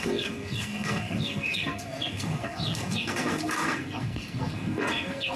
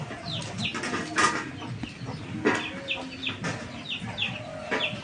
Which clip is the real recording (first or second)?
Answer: second